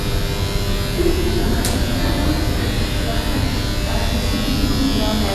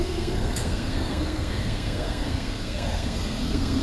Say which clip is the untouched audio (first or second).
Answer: first